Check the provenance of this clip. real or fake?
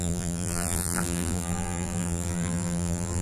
fake